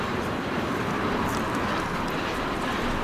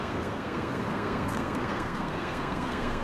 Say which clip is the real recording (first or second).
first